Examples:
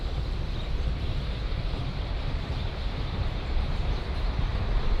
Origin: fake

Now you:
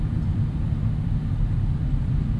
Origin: fake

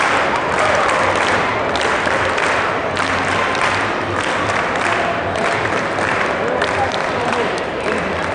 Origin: fake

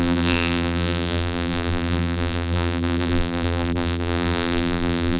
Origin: fake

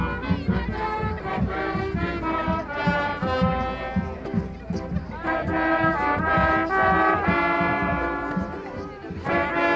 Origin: real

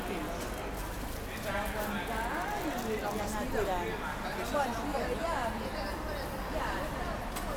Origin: real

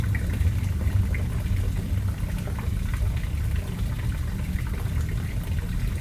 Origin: fake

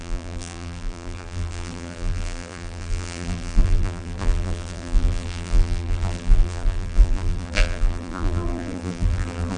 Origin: fake